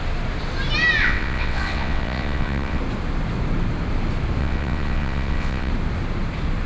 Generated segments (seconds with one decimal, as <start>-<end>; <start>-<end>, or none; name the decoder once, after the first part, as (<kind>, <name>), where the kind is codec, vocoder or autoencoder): 1.0-2.8 (vocoder, WaveNeXt); 4.4-5.7